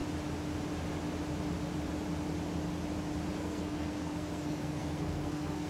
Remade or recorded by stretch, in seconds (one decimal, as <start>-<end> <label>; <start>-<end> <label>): 0.0-3.4 recorded; 3.4-5.7 remade